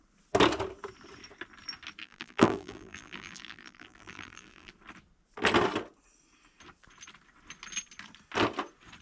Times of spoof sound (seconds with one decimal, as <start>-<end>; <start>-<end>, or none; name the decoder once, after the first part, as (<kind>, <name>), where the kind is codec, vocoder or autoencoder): 2.0-4.7 (vocoder, BigVGAN v2)